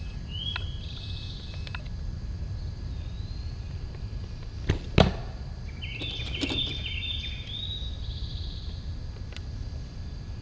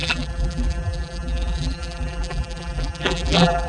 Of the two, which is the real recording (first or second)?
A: first